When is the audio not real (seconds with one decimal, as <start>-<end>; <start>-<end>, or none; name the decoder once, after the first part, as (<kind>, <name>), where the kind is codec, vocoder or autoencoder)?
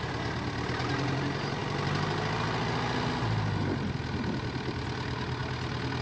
none